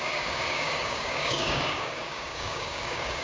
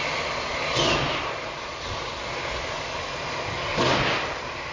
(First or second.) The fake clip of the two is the first